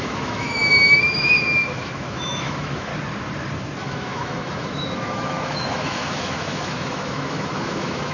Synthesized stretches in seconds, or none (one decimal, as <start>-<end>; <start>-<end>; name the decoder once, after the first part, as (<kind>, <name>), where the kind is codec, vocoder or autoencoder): 0.0-2.9 (autoencoder, DAC-VAE); 3.8-8.1